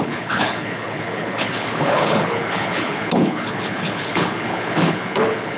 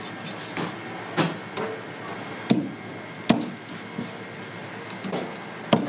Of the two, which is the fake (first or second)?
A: first